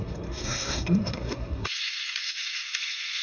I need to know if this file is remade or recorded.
remade